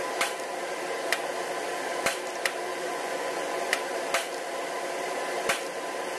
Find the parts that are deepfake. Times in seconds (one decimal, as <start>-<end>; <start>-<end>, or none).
2.7-3.7